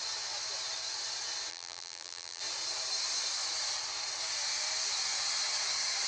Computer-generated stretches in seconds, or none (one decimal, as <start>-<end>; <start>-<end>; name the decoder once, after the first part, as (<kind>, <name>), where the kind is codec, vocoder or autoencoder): 1.5-2.4 (vocoder, BigVGAN v2)